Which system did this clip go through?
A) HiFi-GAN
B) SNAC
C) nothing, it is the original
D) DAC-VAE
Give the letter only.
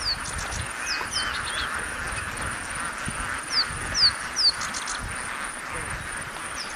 C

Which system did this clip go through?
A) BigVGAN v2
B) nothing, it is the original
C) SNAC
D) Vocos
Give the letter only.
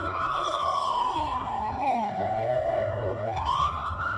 C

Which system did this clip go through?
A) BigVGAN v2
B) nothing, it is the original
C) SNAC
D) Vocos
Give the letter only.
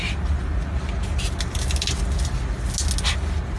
B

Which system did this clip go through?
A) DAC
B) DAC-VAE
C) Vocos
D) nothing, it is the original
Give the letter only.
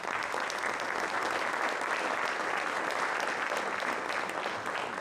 D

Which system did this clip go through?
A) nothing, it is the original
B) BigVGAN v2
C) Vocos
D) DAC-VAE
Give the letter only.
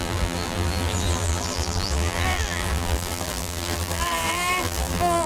B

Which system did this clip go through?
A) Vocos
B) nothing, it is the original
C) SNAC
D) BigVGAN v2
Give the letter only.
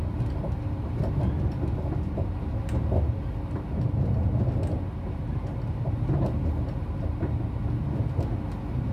B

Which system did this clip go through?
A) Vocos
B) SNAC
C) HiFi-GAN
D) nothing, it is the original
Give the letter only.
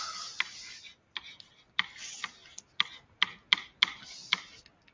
D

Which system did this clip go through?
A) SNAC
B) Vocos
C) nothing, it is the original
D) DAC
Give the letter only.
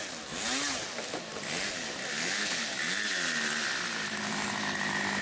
C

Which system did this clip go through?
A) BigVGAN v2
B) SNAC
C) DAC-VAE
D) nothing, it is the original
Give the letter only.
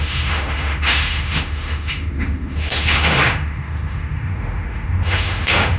C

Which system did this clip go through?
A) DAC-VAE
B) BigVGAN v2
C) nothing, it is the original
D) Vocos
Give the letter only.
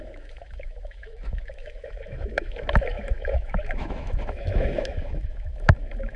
A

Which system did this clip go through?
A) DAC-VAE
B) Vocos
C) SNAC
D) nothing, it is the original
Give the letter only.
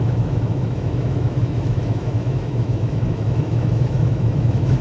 A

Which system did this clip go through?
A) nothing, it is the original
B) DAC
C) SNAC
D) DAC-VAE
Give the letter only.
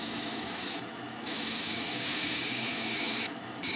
D